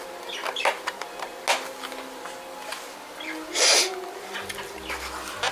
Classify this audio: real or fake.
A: real